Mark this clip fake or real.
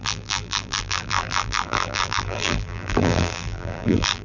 fake